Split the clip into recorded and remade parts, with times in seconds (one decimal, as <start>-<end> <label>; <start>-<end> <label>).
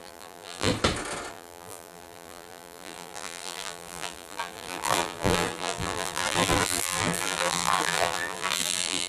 0.0-0.7 remade; 0.7-1.3 recorded; 1.3-9.1 remade